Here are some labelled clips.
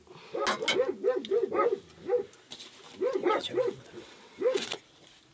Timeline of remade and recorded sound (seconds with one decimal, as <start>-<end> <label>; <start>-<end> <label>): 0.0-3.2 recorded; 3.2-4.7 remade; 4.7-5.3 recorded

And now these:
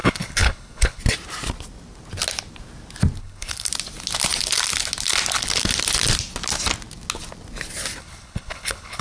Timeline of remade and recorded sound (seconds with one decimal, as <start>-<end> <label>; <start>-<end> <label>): 0.0-1.0 remade; 1.0-3.2 recorded; 3.2-3.7 remade; 3.7-8.0 recorded; 8.0-9.0 remade

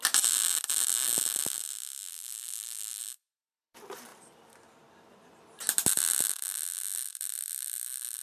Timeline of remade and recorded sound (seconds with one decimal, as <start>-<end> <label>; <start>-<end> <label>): 0.0-2.1 recorded; 2.1-3.0 remade; 3.0-8.2 recorded

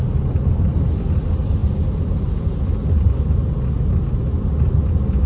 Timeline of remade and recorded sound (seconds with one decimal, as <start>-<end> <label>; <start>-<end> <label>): 0.0-5.3 recorded